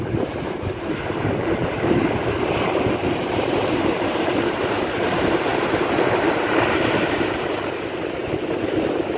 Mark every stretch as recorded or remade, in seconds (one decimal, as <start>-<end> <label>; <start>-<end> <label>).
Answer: 0.0-9.2 remade

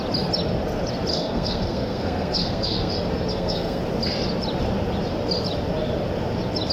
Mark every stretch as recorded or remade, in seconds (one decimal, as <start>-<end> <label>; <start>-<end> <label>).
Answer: 0.0-1.1 recorded; 1.1-2.9 remade; 2.9-3.3 recorded; 3.3-3.8 remade; 3.8-6.7 recorded

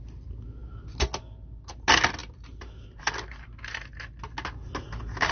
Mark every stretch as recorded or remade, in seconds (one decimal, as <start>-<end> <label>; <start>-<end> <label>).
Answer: 0.0-5.3 recorded

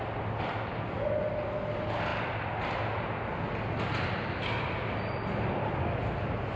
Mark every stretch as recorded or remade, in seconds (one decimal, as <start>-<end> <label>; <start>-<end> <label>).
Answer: 0.0-6.6 recorded

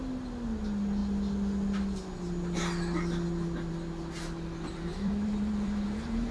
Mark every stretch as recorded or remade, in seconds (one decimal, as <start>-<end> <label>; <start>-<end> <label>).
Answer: 0.0-4.9 recorded; 4.9-6.3 remade

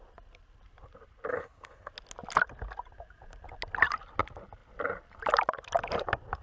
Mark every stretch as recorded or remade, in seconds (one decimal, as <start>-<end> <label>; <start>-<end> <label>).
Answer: 0.0-1.3 recorded; 1.3-1.9 remade; 1.9-6.4 recorded